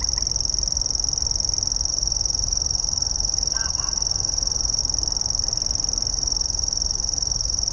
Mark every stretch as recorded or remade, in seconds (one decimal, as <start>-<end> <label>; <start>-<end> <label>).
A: 0.0-1.9 recorded; 1.9-4.8 remade; 4.8-6.1 recorded; 6.1-7.7 remade